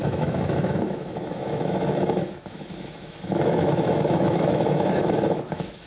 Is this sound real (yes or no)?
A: no